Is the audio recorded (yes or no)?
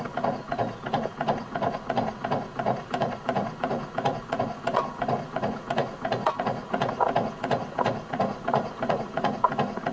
no